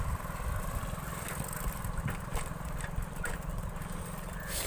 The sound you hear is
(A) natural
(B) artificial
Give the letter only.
A